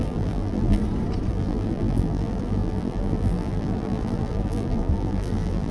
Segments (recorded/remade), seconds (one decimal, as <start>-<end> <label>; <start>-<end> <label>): 0.0-0.8 remade; 0.8-1.3 recorded; 1.3-5.7 remade

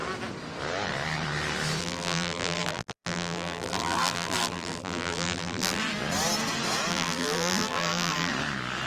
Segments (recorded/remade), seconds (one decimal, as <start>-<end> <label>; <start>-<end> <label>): 0.0-1.8 recorded; 1.8-5.8 remade; 5.8-6.9 recorded; 6.9-8.3 remade; 8.3-8.9 recorded

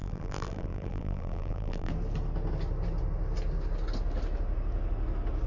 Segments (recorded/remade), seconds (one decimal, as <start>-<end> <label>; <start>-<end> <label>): 0.0-1.9 remade; 1.9-5.5 recorded

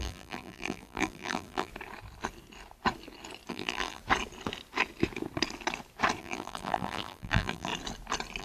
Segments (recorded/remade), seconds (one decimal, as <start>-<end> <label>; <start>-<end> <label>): 0.0-1.7 remade; 1.7-3.5 recorded; 3.5-4.0 remade; 4.0-6.2 recorded; 6.2-7.7 remade; 7.7-8.4 recorded

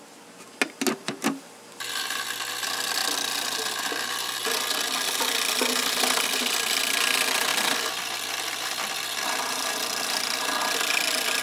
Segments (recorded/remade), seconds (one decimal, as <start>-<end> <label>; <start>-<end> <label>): 0.0-7.5 recorded; 7.5-11.4 remade

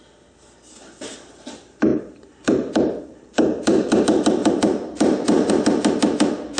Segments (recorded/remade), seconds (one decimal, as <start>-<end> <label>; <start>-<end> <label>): 0.0-1.9 recorded; 1.9-4.0 remade; 4.0-4.4 recorded; 4.4-5.5 remade; 5.5-6.6 recorded

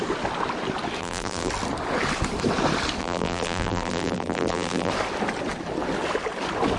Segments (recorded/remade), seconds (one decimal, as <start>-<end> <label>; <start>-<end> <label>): 0.0-1.0 recorded; 1.0-1.5 remade; 1.5-3.0 recorded; 3.0-4.9 remade; 4.9-6.8 recorded